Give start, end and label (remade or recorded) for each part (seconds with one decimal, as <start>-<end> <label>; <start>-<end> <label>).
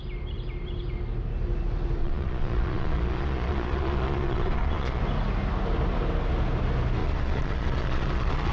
0.0-2.0 recorded; 2.0-5.0 remade; 5.0-7.0 recorded; 7.0-8.5 remade